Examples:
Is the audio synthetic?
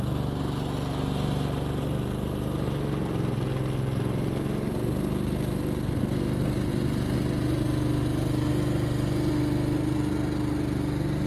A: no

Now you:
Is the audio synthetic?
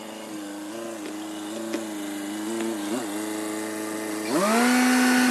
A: no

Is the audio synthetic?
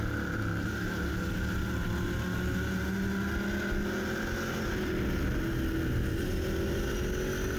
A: no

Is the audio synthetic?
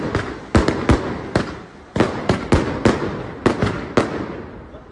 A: no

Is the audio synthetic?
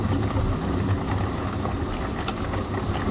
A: no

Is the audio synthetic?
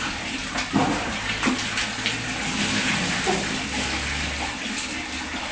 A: no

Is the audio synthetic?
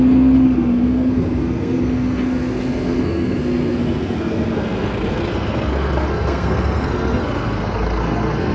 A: yes